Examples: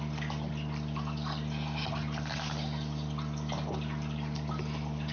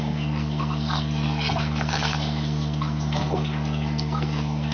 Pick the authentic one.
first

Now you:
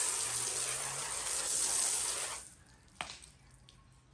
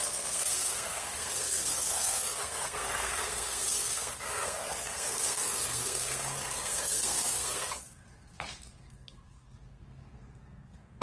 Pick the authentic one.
first